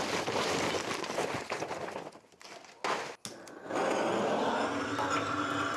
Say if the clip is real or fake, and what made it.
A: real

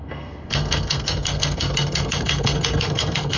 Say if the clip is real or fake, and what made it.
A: fake, codec, SNAC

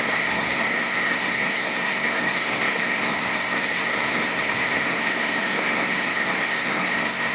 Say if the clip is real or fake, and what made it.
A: fake, codec, SNAC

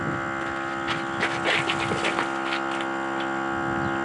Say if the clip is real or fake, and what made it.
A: real